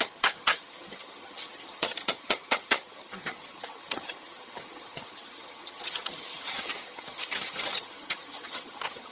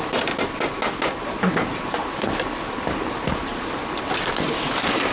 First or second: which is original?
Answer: second